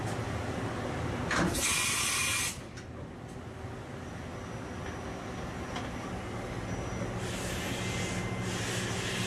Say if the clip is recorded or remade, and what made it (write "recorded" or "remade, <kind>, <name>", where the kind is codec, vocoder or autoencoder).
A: recorded